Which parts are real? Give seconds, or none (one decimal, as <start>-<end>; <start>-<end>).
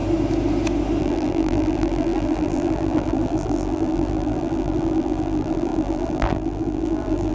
0.0-1.0